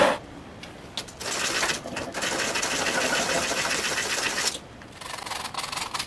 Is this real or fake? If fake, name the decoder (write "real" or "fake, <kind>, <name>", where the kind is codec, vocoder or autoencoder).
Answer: real